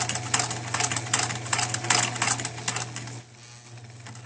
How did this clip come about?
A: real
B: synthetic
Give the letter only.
A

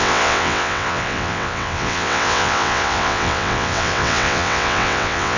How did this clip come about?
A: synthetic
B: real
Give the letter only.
A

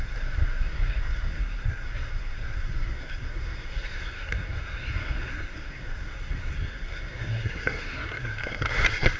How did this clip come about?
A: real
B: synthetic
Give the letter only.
B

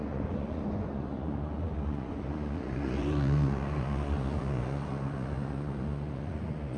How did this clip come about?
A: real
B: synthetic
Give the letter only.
B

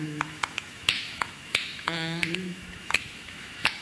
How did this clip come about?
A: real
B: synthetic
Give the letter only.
B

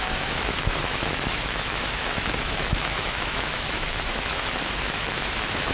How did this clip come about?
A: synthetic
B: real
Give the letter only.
A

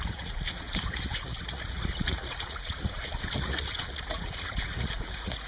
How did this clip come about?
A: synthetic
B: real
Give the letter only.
A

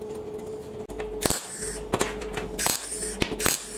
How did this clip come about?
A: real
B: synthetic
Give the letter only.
A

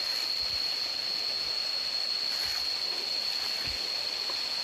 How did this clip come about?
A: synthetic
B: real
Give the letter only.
B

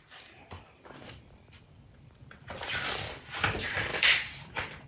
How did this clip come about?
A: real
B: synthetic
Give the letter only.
B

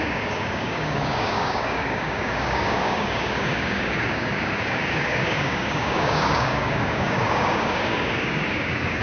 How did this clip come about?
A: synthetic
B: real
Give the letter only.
A